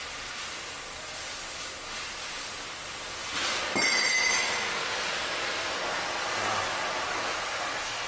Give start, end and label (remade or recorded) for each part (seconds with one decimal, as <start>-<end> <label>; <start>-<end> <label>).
0.0-8.1 recorded